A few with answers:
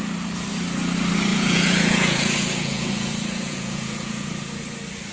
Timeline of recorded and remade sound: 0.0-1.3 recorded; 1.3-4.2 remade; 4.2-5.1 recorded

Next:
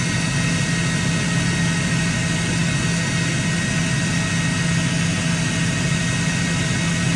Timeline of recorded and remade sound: 0.0-7.2 recorded

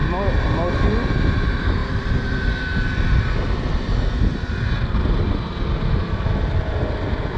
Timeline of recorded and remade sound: 0.0-1.8 recorded; 1.8-4.2 remade; 4.2-7.4 recorded

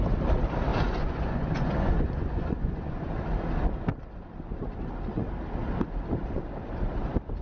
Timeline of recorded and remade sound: 0.0-0.7 recorded; 0.7-3.1 remade; 3.1-7.4 recorded

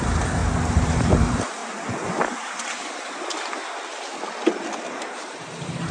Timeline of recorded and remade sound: 0.0-0.4 remade; 0.4-1.0 recorded; 1.0-1.6 remade; 1.6-5.1 recorded; 5.1-5.9 remade

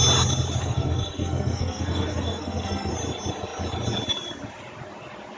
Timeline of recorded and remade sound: 0.0-0.6 recorded; 0.6-2.9 remade; 2.9-5.4 recorded

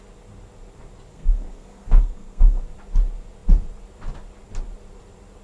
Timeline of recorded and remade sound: 0.0-1.1 recorded; 1.1-2.6 remade; 2.6-5.4 recorded

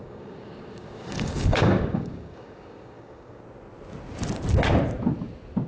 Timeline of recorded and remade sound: 0.0-3.4 remade; 3.4-5.7 recorded